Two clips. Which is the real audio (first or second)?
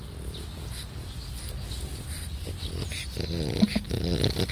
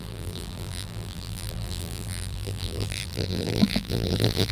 first